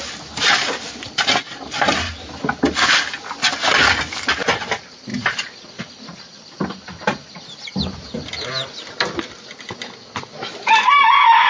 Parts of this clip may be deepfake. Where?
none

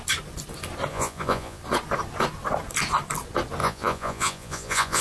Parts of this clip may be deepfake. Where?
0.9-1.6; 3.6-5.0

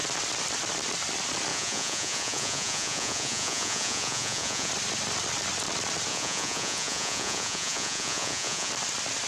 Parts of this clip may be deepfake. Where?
1.5-4.7; 6.1-8.7

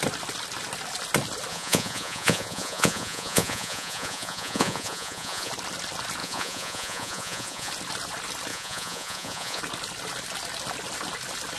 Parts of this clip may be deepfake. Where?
1.5-5.5; 6.2-7.7; 8.5-9.6